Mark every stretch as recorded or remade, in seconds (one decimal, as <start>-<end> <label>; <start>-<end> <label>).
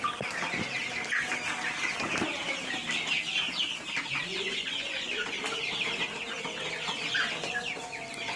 0.0-4.2 recorded; 4.2-5.4 remade; 5.4-8.4 recorded